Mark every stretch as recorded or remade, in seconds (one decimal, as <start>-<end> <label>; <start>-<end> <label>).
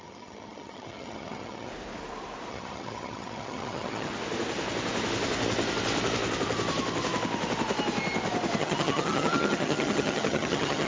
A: 0.0-1.7 remade; 1.7-2.5 recorded; 2.5-4.1 remade; 4.1-8.6 recorded; 8.6-10.9 remade